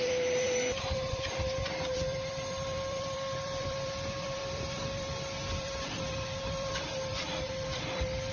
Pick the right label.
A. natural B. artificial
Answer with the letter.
B